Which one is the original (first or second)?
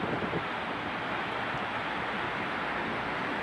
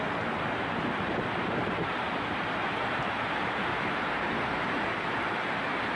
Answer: first